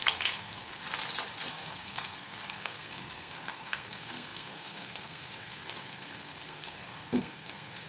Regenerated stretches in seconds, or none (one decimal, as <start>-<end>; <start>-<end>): 0.0-0.8; 1.5-7.9